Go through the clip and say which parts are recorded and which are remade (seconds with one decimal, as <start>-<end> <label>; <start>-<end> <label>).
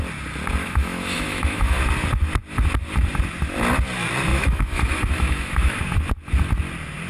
0.0-0.6 recorded; 0.6-1.8 remade; 1.8-4.3 recorded; 4.3-5.8 remade; 5.8-7.1 recorded